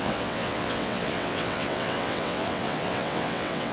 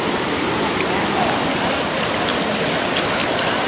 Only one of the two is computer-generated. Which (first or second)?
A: first